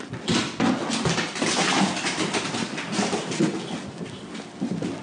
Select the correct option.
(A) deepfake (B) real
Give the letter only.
B